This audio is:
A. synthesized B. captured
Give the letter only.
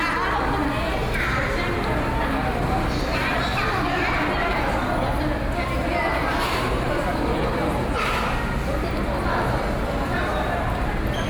B